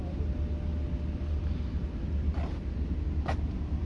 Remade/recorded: recorded